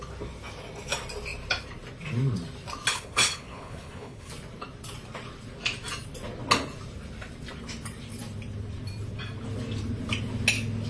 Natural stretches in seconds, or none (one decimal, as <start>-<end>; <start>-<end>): 0.0-2.9; 4.3-10.9

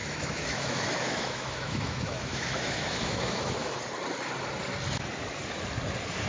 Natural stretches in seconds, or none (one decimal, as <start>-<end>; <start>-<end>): 3.8-6.3

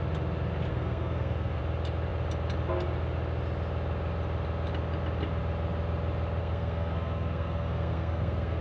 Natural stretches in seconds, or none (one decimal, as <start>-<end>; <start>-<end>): 0.0-0.7; 1.6-6.4

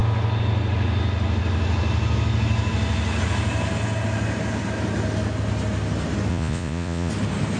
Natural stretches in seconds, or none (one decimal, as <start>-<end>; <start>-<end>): 0.0-6.3; 7.1-7.6

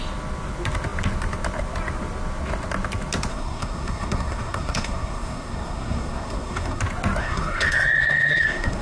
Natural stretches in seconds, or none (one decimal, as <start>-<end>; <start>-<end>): 0.0-3.3; 6.8-7.2

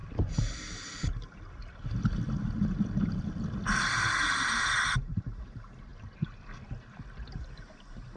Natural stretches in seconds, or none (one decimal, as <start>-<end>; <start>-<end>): 0.0-8.2

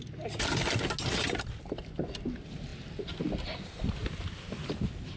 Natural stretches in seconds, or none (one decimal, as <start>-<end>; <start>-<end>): 0.0-5.2